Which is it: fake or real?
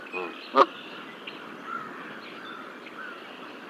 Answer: real